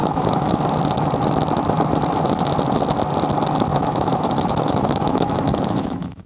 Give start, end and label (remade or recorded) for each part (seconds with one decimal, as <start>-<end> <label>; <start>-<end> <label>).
0.0-0.6 remade; 0.6-3.7 recorded; 3.7-6.3 remade